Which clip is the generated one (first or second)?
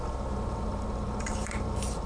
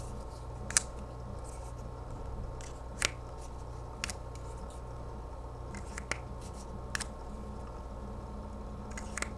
first